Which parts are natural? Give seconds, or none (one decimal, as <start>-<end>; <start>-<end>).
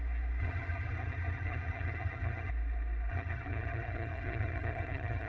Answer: 0.0-0.4; 2.5-3.1